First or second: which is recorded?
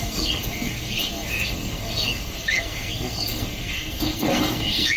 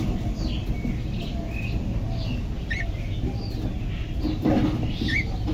second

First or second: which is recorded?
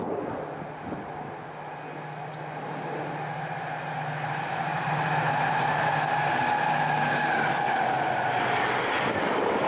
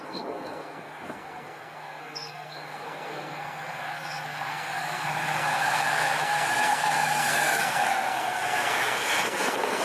first